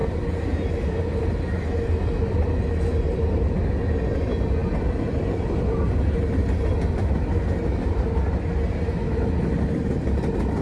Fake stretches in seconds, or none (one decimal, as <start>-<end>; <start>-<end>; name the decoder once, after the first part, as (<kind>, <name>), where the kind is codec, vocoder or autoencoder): none